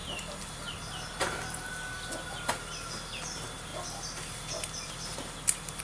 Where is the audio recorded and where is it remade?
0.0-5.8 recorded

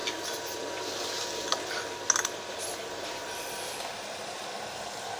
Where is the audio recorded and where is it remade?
0.0-5.2 recorded

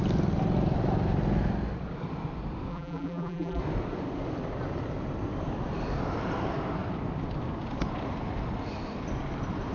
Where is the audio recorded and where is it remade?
0.0-2.7 recorded; 2.7-3.6 remade; 3.6-9.7 recorded

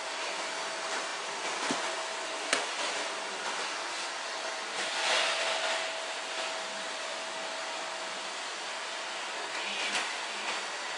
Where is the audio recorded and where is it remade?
0.0-11.0 recorded

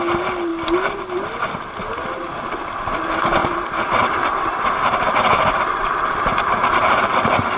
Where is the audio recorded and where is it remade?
0.0-3.4 recorded; 3.4-7.6 remade

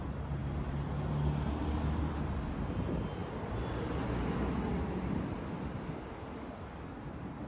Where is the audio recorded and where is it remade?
0.0-7.5 recorded